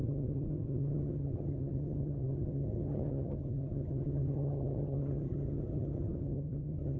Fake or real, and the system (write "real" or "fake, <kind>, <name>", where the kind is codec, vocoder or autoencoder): fake, vocoder, HiFi-GAN